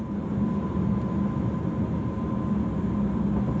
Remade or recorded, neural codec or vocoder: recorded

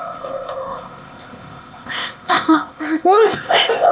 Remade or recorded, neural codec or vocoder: remade, codec, ZipCodec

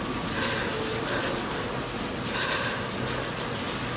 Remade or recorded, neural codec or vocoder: recorded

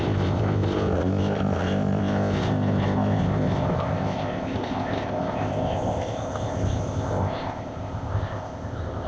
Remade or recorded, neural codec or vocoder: remade, codec, ZipCodec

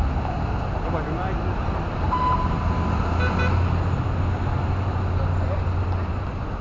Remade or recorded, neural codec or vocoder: recorded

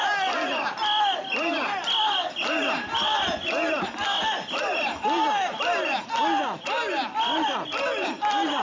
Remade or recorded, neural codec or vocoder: recorded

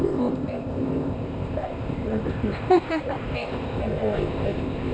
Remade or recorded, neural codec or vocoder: remade, codec, ZipCodec